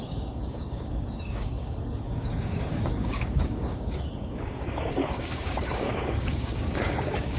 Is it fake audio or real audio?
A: fake